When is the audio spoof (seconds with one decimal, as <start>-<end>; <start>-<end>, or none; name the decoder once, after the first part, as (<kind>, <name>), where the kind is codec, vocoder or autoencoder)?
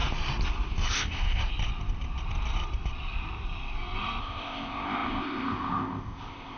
0.9-1.4 (codec, ZipCodec); 4.2-6.6